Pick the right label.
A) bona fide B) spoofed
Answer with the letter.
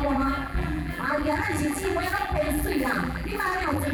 B